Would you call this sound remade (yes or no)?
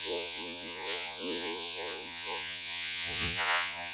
yes